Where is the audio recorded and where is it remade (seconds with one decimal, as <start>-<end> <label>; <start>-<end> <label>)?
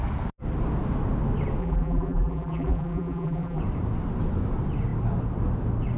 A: 0.0-1.6 recorded; 1.6-3.6 remade; 3.6-6.0 recorded